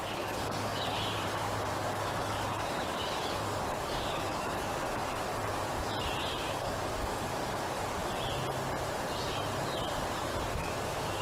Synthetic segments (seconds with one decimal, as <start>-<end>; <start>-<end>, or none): 0.0-5.3; 6.5-8.0; 10.5-11.2